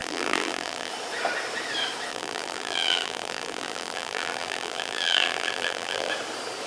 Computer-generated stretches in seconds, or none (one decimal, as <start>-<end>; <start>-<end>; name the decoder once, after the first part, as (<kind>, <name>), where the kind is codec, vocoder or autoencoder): 0.0-0.9 (vocoder, BigVGAN v2); 2.1-6.1